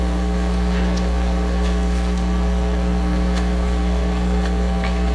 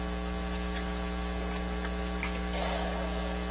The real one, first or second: second